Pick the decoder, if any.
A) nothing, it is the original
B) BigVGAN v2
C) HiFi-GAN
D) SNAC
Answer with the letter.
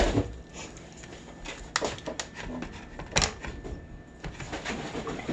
A